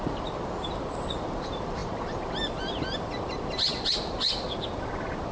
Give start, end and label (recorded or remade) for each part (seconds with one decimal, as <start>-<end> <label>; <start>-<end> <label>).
0.0-5.3 recorded